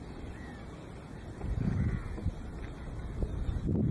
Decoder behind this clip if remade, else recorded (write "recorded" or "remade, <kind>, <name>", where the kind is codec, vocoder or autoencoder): recorded